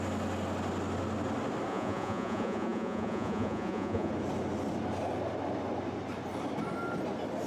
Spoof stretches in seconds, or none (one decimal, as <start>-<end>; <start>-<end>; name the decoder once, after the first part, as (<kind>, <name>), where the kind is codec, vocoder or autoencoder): 1.7-4.1 (vocoder, Vocos)